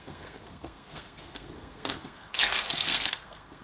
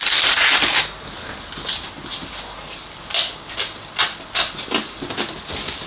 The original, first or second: second